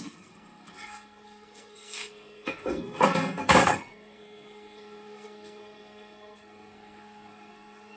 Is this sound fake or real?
fake